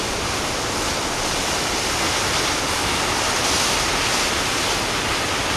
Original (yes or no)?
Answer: yes